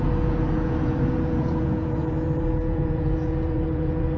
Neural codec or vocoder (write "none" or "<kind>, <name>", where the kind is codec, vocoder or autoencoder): vocoder, Vocos